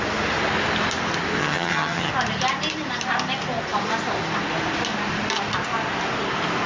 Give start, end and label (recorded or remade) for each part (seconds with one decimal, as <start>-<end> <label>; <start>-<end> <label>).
0.0-1.4 recorded; 1.4-2.1 remade; 2.1-6.7 recorded